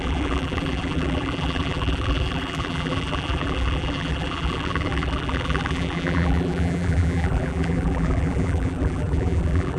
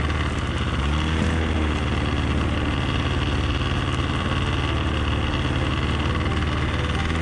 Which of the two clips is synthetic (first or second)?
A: first